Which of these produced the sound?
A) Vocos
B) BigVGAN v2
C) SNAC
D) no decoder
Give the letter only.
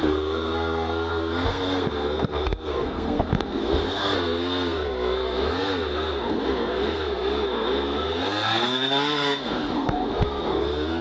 C